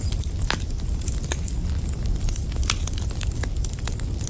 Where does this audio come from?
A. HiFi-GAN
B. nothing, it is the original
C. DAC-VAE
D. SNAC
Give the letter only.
B